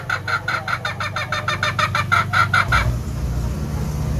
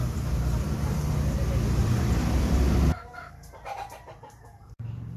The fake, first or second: second